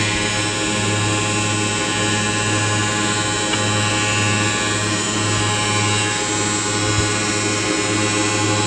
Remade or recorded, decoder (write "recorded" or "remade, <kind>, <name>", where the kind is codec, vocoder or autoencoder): recorded